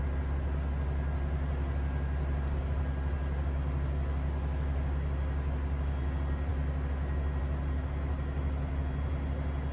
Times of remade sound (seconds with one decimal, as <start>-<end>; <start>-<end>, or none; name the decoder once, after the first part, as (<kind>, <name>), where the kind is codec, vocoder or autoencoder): none